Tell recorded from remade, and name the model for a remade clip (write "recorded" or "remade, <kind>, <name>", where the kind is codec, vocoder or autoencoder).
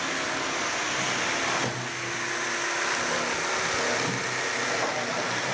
recorded